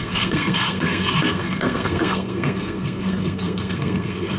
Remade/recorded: remade